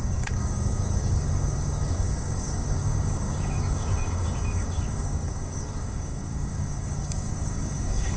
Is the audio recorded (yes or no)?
no